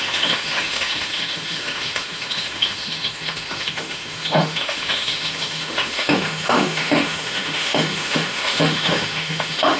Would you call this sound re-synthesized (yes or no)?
yes